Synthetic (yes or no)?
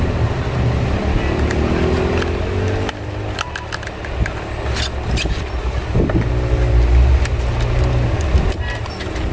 no